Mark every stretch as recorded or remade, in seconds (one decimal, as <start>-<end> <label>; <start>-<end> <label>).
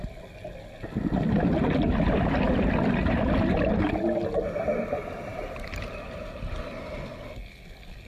0.0-5.3 recorded; 5.3-6.6 remade; 6.6-8.1 recorded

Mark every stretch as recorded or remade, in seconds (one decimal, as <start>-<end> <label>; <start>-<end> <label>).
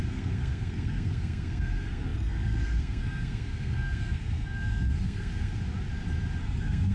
0.0-5.6 remade; 5.6-6.4 recorded; 6.4-6.9 remade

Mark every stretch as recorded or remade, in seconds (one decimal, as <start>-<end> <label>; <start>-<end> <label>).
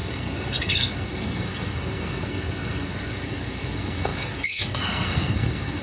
0.0-5.8 remade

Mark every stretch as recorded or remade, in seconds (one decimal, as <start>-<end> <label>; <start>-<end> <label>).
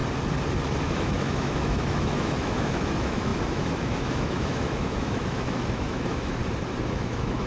0.0-0.8 recorded; 0.8-6.4 remade; 6.4-6.9 recorded; 6.9-7.5 remade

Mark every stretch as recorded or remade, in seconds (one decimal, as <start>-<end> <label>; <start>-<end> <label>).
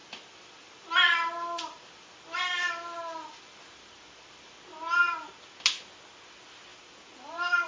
0.0-4.6 remade; 4.6-6.7 recorded; 6.7-7.7 remade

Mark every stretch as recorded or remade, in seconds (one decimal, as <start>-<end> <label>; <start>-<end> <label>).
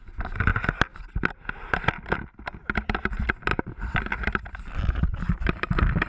0.0-3.5 recorded; 3.5-6.1 remade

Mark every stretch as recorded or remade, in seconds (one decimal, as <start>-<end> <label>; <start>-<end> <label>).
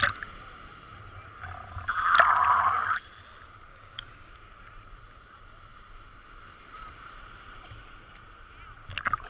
0.0-3.7 recorded; 3.7-4.3 remade; 4.3-9.3 recorded